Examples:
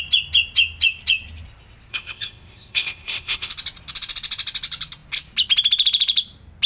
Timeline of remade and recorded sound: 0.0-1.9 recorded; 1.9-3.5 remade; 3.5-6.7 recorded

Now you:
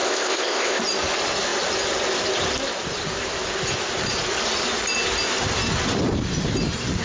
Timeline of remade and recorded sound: 0.0-0.8 remade; 0.8-7.0 recorded

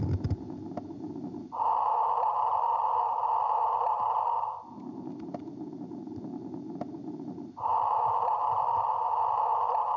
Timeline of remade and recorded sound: 0.0-10.0 recorded

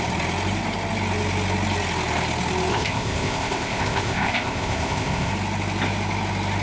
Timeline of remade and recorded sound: 0.0-2.7 recorded; 2.7-5.3 remade; 5.3-6.6 recorded